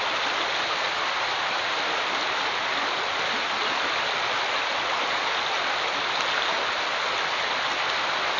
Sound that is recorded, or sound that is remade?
recorded